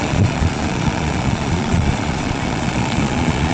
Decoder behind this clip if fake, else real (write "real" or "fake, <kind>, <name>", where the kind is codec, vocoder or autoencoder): fake, vocoder, Vocos